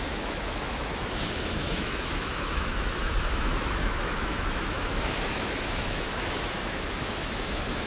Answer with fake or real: fake